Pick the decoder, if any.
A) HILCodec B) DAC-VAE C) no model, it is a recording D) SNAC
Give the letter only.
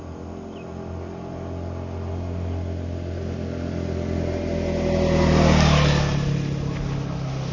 C